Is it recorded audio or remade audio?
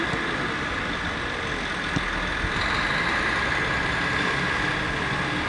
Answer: recorded